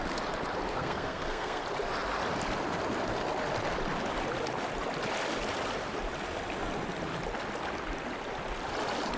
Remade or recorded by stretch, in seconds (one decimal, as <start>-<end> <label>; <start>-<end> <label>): 0.0-0.7 recorded; 0.7-1.6 remade; 1.6-9.2 recorded